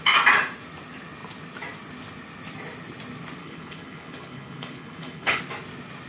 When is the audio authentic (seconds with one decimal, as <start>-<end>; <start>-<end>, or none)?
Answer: 0.0-3.4; 5.4-6.1